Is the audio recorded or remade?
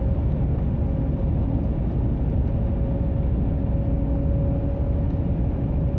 recorded